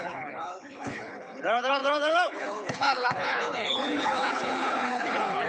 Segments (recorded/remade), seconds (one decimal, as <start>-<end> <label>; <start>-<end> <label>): 0.0-5.5 remade